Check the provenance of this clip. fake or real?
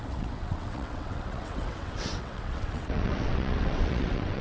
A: fake